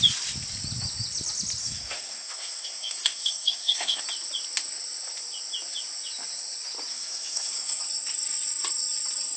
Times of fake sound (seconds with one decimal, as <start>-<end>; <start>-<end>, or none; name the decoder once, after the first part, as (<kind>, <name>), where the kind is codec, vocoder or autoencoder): 1.6-4.0 (codec, SNAC); 6.9-7.8